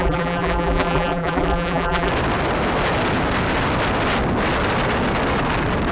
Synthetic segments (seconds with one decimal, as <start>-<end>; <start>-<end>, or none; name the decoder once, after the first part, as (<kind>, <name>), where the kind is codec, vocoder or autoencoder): 0.0-2.1 (vocoder, BigVGAN v2)